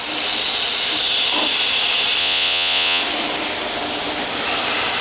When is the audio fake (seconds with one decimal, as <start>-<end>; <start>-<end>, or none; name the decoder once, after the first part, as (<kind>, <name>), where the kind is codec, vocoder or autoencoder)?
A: 2.2-3.0 (vocoder, Vocos)